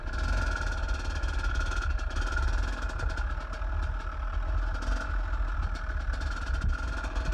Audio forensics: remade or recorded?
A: recorded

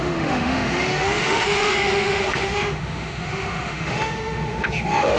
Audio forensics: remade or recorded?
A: remade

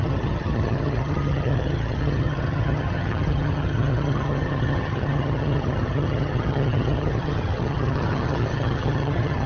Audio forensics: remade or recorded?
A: remade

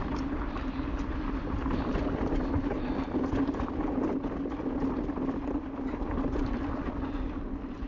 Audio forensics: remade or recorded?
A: recorded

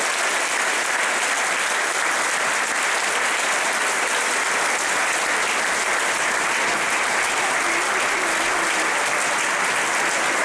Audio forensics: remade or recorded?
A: recorded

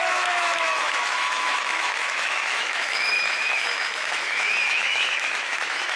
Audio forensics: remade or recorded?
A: remade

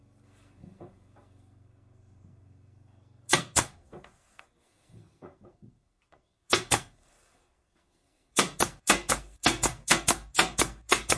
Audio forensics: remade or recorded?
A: remade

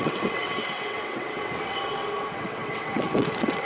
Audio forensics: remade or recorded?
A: remade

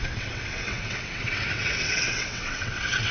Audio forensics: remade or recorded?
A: remade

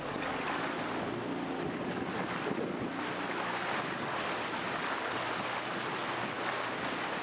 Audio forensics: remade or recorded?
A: recorded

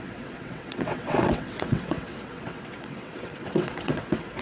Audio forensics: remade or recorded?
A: remade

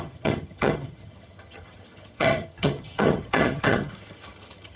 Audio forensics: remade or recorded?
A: remade